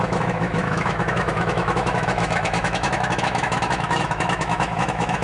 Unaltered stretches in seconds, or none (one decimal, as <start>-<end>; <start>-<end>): none